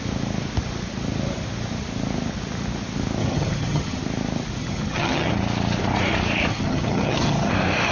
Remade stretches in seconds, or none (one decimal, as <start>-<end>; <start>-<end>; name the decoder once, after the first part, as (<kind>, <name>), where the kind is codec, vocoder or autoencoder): 3.2-4.0 (vocoder, HiFi-GAN); 4.6-5.3; 6.5-7.5